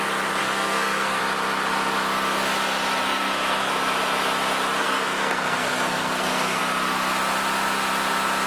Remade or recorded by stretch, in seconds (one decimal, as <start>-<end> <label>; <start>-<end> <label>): 0.0-0.4 recorded; 0.4-1.2 remade; 1.2-3.0 recorded; 3.0-3.7 remade; 3.7-4.8 recorded; 4.8-6.6 remade; 6.6-8.5 recorded